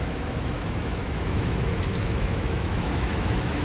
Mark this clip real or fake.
fake